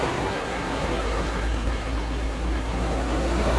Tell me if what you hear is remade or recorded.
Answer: remade